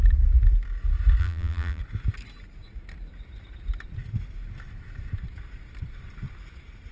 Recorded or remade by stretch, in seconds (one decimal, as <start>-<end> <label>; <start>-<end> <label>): 0.0-1.2 recorded; 1.2-1.8 remade; 1.8-6.9 recorded